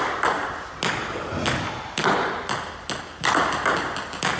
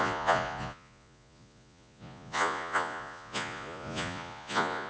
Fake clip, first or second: second